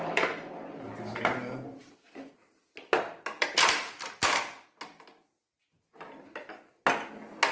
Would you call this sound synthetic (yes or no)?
no